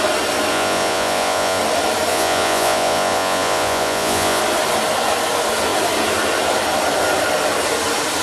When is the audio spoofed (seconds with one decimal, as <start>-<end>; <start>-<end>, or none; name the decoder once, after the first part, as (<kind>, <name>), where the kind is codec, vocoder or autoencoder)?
0.5-1.6 (vocoder, Vocos); 2.1-4.4